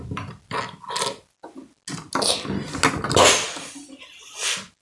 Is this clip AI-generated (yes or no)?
no